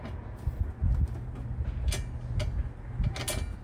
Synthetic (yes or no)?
no